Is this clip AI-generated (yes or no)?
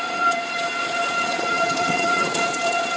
yes